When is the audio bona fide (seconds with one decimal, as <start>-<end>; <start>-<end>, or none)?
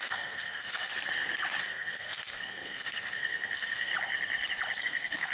0.9-1.6; 3.9-4.8